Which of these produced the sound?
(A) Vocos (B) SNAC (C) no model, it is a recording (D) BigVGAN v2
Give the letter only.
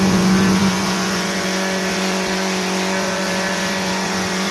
A